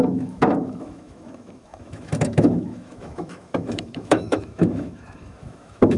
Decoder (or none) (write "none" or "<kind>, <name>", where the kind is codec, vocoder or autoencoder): autoencoder, DAC-VAE